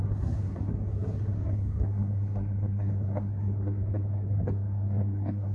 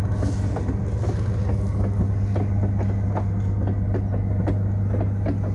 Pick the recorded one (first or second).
second